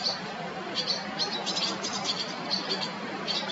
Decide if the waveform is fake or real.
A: fake